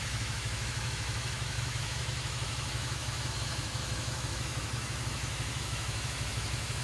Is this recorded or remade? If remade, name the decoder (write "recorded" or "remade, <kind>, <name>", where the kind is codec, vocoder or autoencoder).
remade, autoencoder, DAC-VAE